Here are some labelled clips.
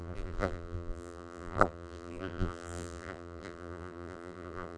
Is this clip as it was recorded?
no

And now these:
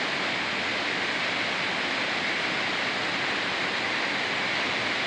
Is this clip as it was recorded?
yes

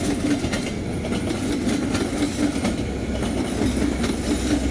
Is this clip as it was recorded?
yes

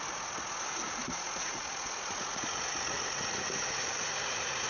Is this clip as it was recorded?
no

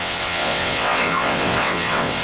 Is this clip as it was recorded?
no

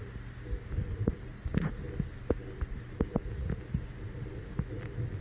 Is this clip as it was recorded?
yes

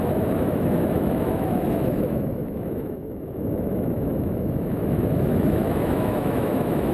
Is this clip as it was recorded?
no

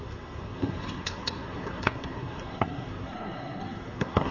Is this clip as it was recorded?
no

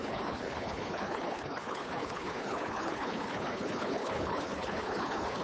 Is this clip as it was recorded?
no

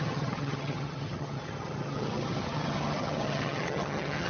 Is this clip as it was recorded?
no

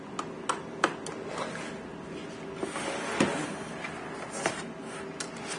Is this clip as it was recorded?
yes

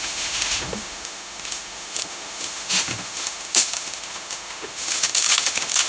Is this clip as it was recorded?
no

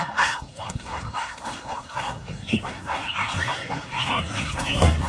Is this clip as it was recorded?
no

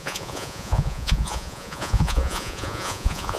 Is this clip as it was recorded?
no